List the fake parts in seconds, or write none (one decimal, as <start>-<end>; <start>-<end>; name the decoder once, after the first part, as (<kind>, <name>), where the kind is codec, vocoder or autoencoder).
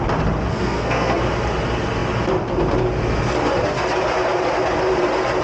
0.5-1.2 (codec, SNAC)